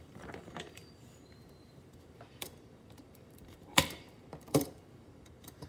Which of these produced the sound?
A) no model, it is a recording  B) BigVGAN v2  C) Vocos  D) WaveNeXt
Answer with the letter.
B